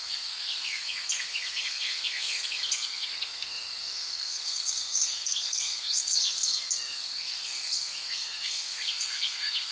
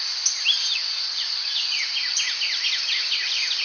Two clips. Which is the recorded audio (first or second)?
second